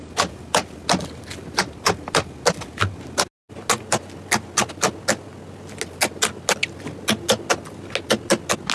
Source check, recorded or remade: recorded